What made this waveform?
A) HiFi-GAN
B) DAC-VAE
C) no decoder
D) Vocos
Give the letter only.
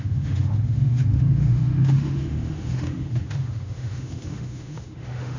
B